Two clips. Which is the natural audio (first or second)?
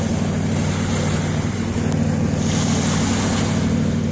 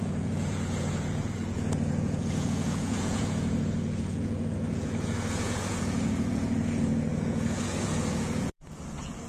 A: first